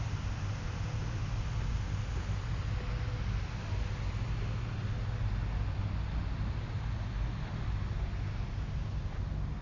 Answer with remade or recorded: recorded